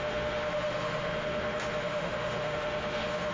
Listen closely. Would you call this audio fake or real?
fake